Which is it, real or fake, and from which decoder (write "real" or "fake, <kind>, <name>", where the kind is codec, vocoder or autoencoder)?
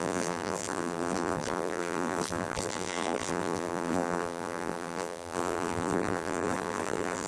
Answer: fake, vocoder, BigVGAN v2